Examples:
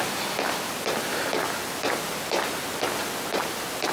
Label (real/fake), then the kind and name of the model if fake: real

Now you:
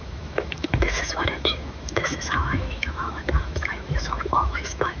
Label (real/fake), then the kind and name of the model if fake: fake, autoencoder, DAC-VAE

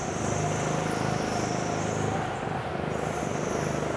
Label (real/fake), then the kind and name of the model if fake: real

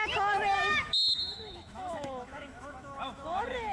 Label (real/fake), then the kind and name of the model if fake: fake, autoencoder, DAC-VAE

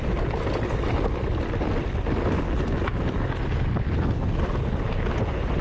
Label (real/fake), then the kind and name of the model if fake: real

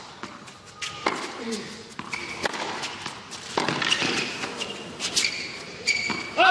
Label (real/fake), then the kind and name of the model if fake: real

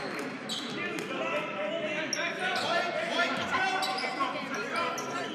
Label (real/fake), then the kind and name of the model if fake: real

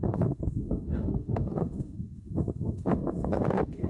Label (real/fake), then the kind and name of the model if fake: fake, autoencoder, DAC-VAE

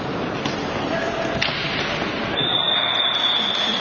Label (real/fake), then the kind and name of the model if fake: real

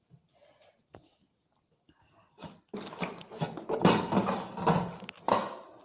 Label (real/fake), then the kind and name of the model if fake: real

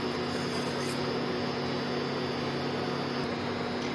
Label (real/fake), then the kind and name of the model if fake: real